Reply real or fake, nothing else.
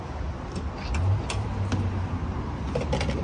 real